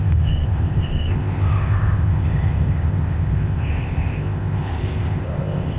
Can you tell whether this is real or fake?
fake